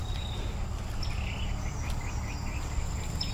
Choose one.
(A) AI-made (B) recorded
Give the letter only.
B